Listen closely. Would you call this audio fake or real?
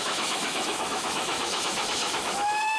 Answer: fake